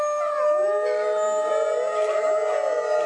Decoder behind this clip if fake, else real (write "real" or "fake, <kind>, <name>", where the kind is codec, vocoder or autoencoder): real